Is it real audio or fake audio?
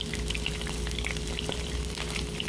real